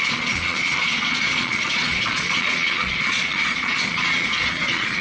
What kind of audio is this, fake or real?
fake